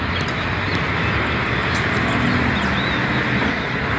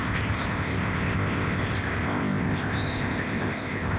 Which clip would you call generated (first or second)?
second